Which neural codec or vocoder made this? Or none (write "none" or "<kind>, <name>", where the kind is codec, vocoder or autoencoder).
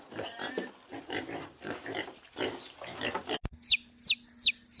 none